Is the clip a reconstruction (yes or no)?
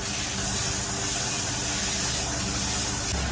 no